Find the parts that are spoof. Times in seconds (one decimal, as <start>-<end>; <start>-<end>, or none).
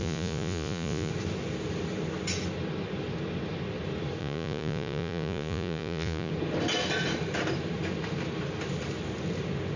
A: 0.0-1.1; 4.2-6.3